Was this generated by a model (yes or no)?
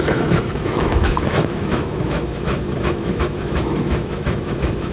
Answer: yes